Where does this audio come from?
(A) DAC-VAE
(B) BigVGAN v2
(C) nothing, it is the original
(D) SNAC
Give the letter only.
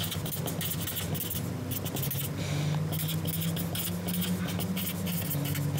C